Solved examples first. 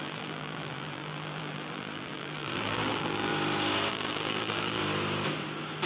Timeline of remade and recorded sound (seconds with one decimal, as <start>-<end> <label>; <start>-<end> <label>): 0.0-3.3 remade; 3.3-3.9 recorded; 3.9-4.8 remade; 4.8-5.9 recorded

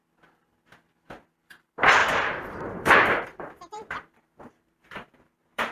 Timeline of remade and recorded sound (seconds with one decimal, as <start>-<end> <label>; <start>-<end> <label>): 0.0-2.0 recorded; 2.0-5.7 remade

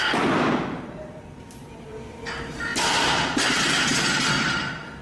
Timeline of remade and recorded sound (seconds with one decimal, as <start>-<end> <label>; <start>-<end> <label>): 0.0-5.0 recorded